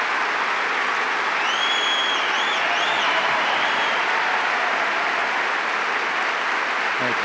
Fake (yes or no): no